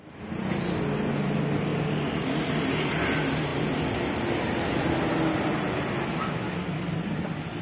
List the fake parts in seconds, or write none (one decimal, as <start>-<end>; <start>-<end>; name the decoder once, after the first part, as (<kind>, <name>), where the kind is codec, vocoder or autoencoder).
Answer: none